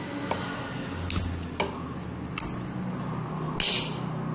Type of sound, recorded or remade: recorded